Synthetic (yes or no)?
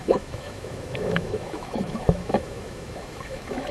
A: yes